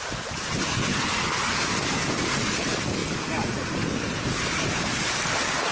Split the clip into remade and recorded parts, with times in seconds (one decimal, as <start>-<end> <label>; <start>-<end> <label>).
0.0-5.7 recorded